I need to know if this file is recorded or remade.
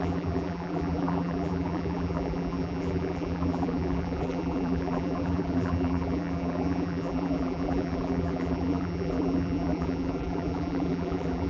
remade